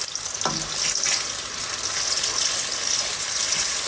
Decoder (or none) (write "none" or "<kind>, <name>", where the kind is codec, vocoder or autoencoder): none